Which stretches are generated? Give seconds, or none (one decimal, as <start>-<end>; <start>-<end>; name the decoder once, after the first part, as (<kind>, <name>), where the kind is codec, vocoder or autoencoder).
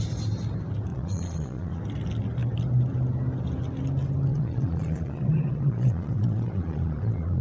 0.9-1.8 (vocoder, Vocos); 4.3-7.4